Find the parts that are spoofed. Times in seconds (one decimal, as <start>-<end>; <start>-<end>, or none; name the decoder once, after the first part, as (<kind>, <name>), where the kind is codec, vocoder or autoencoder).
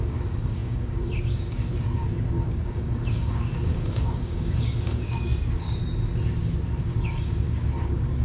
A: 0.0-5.8 (codec, DAC); 6.8-8.2